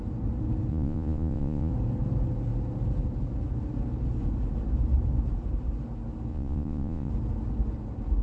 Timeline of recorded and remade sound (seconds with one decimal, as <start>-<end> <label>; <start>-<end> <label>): 0.0-0.7 recorded; 0.7-1.7 remade; 1.7-6.3 recorded; 6.3-7.1 remade; 7.1-8.2 recorded